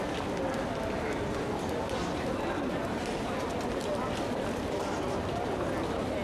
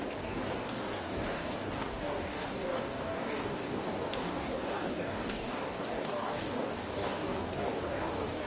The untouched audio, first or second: first